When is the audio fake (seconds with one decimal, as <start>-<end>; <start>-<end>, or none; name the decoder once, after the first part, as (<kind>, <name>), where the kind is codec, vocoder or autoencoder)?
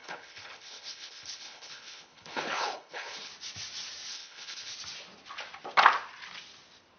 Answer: 0.0-3.3 (codec, HILCodec); 4.1-4.7